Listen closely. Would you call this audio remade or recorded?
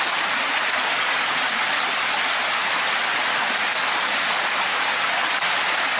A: recorded